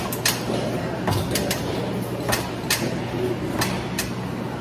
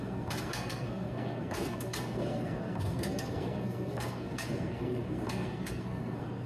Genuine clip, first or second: first